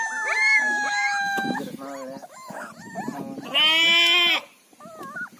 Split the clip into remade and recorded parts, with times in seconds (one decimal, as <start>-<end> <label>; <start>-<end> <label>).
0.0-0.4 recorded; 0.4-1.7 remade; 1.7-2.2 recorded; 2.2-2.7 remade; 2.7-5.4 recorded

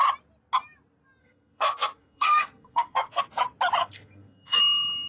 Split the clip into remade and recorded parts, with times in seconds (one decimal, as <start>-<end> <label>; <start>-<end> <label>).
0.0-1.2 recorded; 1.2-3.2 remade; 3.2-3.8 recorded; 3.8-4.6 remade; 4.6-5.1 recorded

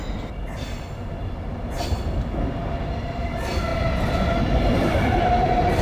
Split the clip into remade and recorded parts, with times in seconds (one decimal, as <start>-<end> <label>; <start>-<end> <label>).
0.0-2.6 recorded; 2.6-3.3 remade; 3.3-5.8 recorded

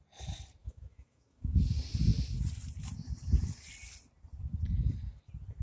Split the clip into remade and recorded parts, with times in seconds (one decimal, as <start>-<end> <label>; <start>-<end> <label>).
0.0-0.6 recorded; 0.6-1.6 remade; 1.6-5.6 recorded

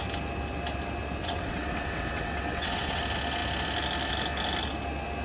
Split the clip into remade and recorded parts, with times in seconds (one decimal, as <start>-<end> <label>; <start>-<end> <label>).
0.0-1.2 recorded; 1.2-3.0 remade; 3.0-5.2 recorded

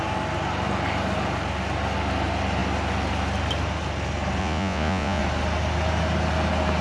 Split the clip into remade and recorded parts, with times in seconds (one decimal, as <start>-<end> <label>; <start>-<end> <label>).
0.0-4.4 recorded; 4.4-5.2 remade; 5.2-6.8 recorded

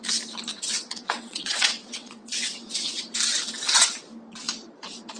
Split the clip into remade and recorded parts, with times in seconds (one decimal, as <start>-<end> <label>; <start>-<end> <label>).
0.0-0.5 recorded; 0.5-3.0 remade; 3.0-5.2 recorded

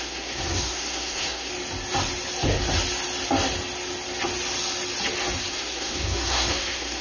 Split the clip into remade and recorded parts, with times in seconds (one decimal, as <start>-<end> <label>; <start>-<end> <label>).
0.0-1.5 remade; 1.5-5.5 recorded; 5.5-7.0 remade